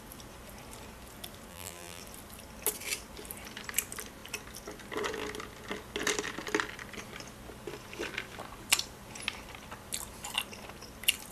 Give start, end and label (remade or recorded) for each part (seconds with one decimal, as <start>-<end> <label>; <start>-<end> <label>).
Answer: 0.0-1.5 recorded; 1.5-2.0 remade; 2.0-11.3 recorded